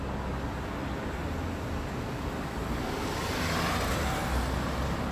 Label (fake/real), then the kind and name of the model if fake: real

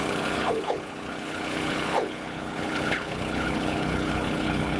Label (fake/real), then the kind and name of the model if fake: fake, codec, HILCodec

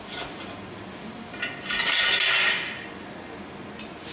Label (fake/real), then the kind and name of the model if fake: real